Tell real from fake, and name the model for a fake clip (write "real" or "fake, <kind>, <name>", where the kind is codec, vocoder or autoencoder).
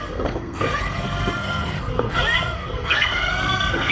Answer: fake, codec, SNAC